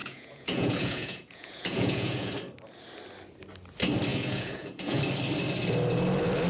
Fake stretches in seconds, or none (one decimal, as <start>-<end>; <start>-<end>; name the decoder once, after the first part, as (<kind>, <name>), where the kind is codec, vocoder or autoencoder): 0.0-2.3 (vocoder, Vocos); 4.1-5.0